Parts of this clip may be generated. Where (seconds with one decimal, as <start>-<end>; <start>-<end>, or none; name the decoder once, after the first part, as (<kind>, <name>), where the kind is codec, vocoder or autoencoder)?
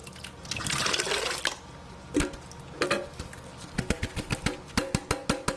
none